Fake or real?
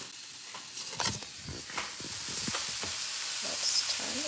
real